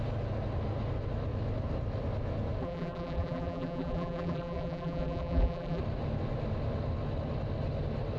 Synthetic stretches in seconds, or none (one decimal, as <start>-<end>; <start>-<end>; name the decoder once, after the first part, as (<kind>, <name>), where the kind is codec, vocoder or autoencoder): 2.6-5.8 (vocoder, BigVGAN v2)